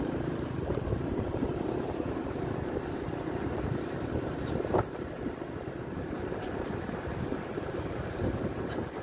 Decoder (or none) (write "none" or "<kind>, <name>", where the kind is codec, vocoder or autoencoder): vocoder, BigVGAN v2